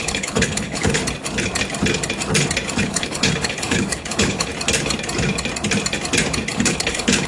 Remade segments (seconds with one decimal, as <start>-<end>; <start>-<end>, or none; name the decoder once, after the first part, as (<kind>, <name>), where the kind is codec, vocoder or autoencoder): 0.0-1.0 (codec, HILCodec); 2.8-4.5; 6.5-7.3